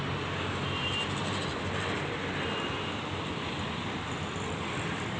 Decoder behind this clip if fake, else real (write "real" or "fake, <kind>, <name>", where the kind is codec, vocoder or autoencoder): real